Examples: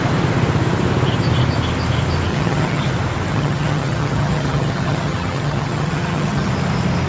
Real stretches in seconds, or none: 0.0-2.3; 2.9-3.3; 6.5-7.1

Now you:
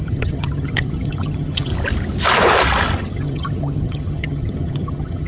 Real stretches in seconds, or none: 1.7-3.0

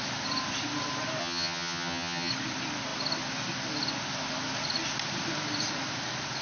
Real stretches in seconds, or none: 0.0-1.2; 2.3-6.4

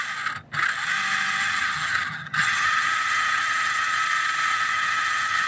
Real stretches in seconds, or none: 0.0-1.4; 4.0-4.5

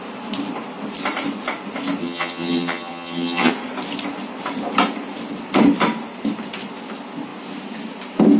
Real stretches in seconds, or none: 0.0-2.0; 3.5-8.4

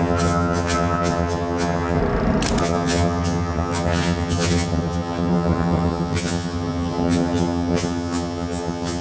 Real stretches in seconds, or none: 2.0-2.6

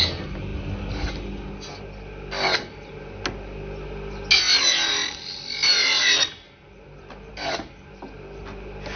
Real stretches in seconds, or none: 0.0-9.0

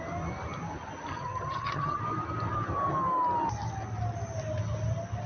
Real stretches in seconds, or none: 0.0-1.1; 2.0-5.3